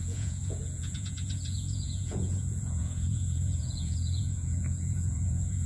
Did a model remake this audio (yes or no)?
yes